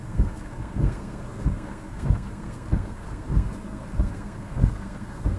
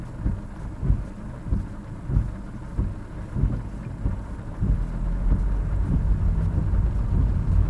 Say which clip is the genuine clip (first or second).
second